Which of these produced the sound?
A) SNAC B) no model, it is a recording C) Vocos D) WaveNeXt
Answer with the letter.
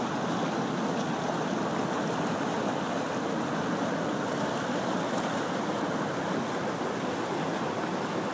B